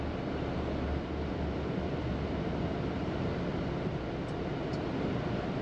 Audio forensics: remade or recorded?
recorded